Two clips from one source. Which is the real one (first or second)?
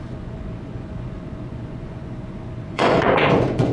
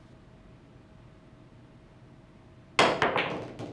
second